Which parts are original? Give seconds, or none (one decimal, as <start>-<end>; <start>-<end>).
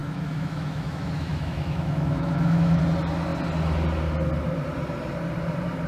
2.8-5.9